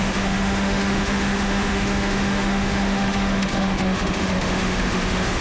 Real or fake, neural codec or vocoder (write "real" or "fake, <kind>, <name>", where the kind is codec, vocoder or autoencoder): fake, autoencoder, DAC-VAE